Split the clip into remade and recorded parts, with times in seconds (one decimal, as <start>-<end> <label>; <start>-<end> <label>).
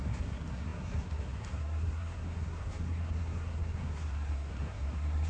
0.0-5.3 remade